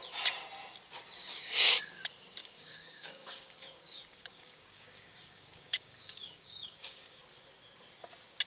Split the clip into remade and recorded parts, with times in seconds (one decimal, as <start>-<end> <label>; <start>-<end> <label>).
0.0-1.2 recorded; 1.2-1.8 remade; 1.8-2.4 recorded; 2.4-7.2 remade; 7.2-8.5 recorded